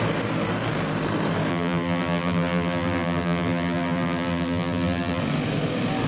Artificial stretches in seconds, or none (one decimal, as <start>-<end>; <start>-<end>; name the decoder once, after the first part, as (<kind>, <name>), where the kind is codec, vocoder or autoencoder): 1.5-5.2 (vocoder, BigVGAN v2)